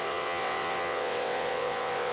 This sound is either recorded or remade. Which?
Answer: remade